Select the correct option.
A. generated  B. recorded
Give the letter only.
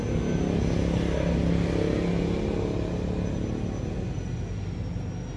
B